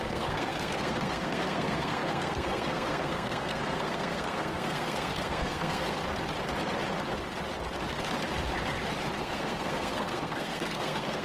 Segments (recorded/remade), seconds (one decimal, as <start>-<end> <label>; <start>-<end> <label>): 0.0-6.0 remade; 6.0-9.2 recorded; 9.2-11.2 remade